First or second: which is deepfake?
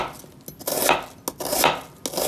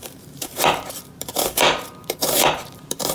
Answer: second